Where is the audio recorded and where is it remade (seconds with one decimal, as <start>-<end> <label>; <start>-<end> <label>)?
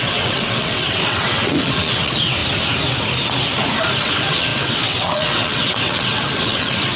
0.0-2.4 remade; 2.4-4.0 recorded; 4.0-7.0 remade